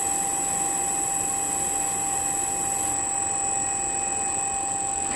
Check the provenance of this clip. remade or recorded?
recorded